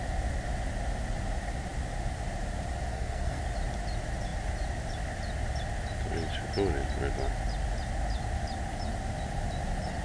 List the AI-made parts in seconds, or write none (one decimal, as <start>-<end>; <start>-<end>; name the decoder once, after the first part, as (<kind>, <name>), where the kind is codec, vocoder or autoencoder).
2.9-3.4 (codec, SNAC)